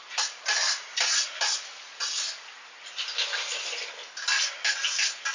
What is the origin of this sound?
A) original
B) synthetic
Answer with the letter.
A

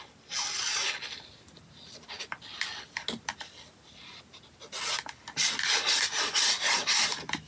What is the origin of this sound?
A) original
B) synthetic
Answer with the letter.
A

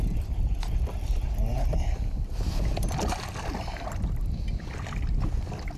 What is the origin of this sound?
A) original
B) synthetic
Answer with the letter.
A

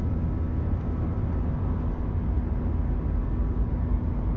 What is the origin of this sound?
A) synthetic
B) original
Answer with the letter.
B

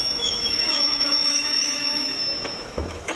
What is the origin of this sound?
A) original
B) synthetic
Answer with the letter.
B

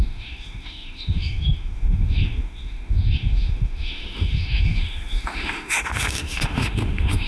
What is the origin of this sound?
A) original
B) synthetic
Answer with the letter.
B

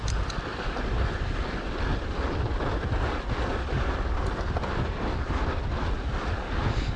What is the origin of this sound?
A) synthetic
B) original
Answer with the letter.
B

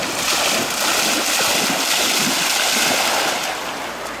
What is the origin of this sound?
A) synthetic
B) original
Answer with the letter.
B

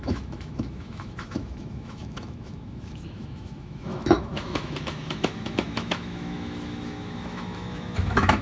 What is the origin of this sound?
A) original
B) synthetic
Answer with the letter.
B